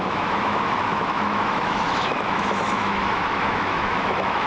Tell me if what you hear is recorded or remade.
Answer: remade